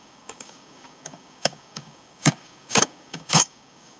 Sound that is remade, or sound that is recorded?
remade